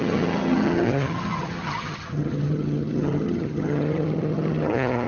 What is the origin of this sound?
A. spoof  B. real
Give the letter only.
A